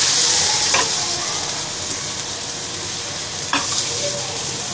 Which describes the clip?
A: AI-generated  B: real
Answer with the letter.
B